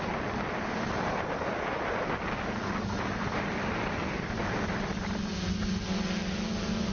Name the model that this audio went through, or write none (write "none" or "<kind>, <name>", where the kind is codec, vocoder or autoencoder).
none